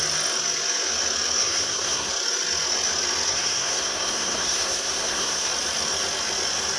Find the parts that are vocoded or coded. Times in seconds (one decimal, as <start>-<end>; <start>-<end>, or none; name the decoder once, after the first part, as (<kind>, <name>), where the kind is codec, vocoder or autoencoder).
1.4-2.1 (codec, SNAC); 3.3-5.5